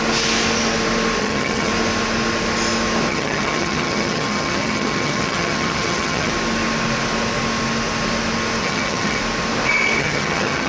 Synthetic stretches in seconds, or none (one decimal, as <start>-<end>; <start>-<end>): 1.2-1.7; 3.1-6.3; 8.6-9.2; 10.0-10.7